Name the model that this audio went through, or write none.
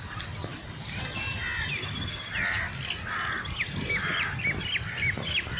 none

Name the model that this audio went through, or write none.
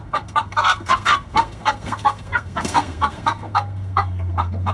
codec, SNAC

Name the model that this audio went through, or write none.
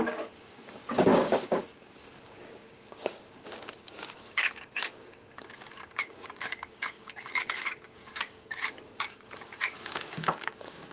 codec, DAC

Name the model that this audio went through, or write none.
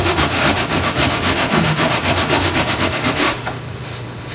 autoencoder, DAC-VAE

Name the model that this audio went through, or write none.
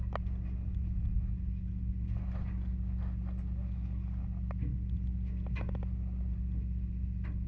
none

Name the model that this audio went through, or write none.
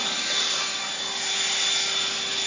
none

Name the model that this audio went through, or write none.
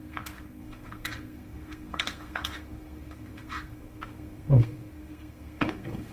codec, SNAC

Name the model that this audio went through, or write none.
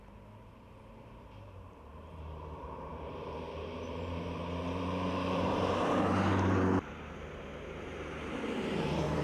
vocoder, BigVGAN v2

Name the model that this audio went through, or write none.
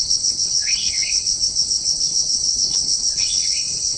codec, HILCodec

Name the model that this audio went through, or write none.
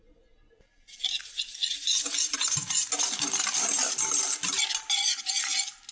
none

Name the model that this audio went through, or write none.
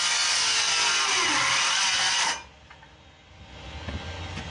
none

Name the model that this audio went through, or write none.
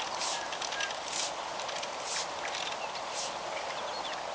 none